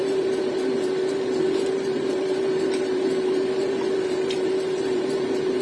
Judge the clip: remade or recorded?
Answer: remade